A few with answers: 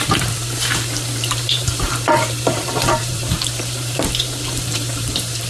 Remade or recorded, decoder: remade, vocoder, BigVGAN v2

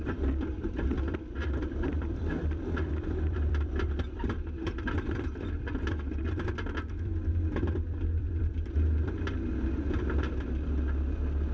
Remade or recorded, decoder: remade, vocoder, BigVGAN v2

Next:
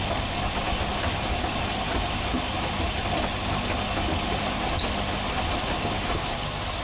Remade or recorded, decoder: recorded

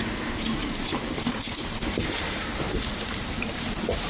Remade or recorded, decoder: remade, vocoder, BigVGAN v2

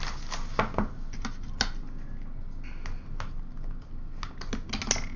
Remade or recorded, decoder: recorded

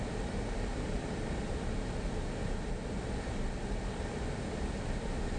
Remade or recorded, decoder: recorded